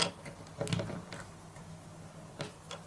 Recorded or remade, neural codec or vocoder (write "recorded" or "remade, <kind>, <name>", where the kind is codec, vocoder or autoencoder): recorded